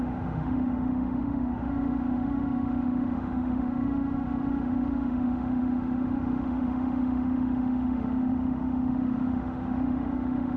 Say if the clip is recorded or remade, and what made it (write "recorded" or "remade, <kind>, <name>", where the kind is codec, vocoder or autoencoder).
remade, autoencoder, DAC-VAE